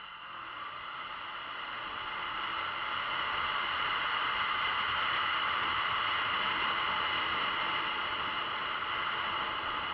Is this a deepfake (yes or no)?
no